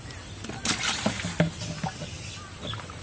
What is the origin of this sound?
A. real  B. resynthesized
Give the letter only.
A